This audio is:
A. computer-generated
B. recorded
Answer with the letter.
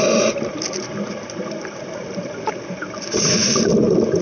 B